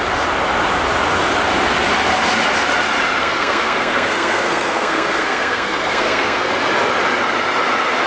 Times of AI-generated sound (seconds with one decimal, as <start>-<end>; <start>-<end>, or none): 3.2-6.5